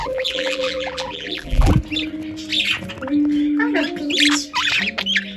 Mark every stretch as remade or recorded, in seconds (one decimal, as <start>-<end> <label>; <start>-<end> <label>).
0.0-1.7 remade; 1.7-5.4 recorded